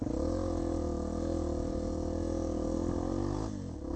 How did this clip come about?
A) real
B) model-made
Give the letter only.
A